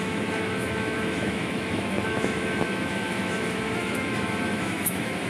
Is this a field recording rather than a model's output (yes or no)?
no